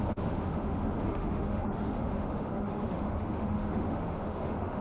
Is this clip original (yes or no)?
no